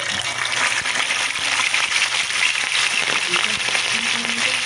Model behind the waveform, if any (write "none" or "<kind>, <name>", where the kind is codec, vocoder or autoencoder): none